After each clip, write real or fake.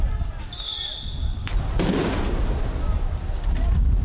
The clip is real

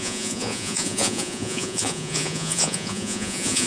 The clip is fake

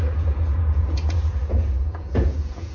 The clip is fake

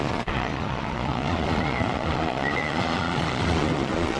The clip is fake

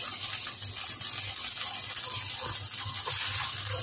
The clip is real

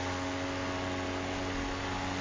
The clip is real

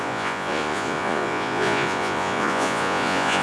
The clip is fake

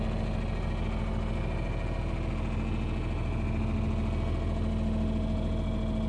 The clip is real